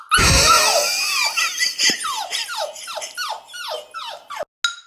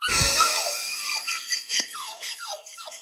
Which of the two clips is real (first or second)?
first